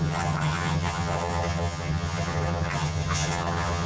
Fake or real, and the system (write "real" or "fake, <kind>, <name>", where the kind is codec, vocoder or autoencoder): fake, vocoder, HiFi-GAN